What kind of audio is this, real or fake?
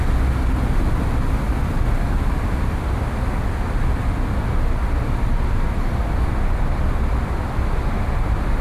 real